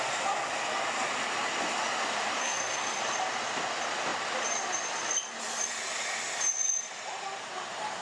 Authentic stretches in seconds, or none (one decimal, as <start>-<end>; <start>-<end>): 0.0-2.4; 3.0-8.0